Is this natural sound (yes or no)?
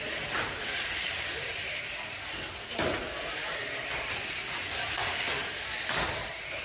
yes